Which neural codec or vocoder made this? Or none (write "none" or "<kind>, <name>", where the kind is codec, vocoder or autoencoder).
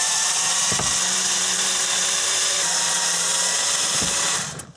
vocoder, BigVGAN v2